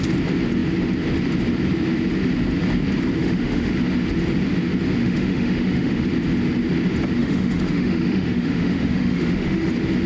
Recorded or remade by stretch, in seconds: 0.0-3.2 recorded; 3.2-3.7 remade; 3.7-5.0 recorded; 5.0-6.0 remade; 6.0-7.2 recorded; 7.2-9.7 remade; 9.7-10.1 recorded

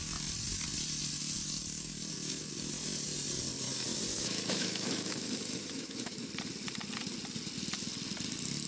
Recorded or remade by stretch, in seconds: 0.0-4.1 recorded; 4.1-6.3 remade; 6.3-8.7 recorded